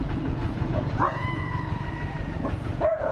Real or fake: fake